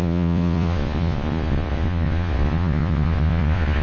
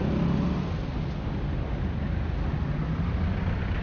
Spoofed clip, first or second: first